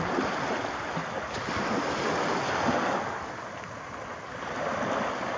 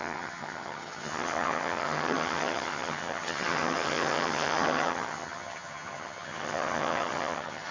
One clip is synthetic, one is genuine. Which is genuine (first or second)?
first